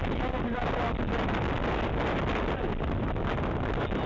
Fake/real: real